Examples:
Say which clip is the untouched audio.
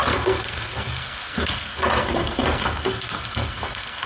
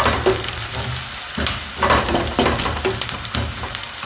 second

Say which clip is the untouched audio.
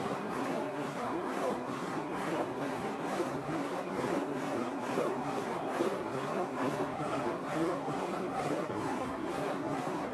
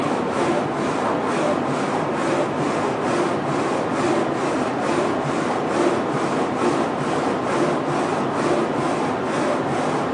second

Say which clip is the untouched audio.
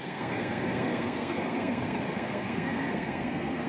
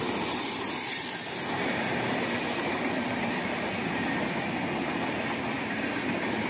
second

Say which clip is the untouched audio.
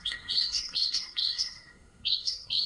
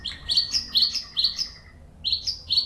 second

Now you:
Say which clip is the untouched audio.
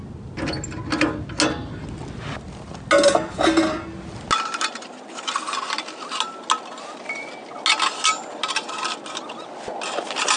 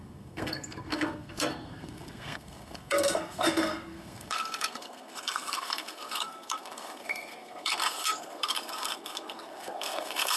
first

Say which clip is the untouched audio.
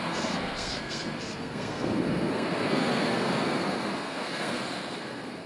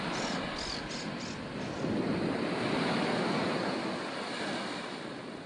second